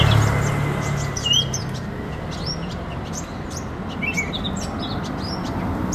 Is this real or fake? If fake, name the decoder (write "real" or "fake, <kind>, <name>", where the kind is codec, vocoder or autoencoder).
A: real